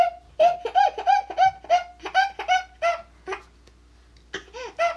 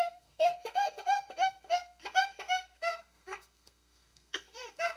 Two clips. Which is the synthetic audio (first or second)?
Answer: second